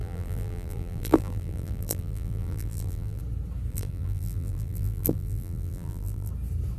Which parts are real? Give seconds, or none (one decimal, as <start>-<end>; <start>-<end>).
3.2-3.7; 6.3-6.8